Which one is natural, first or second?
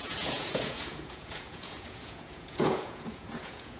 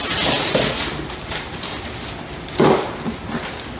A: second